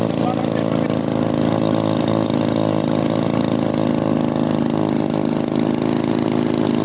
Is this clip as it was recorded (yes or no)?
yes